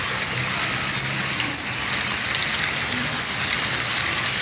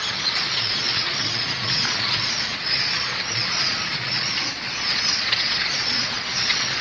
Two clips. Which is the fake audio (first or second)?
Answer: second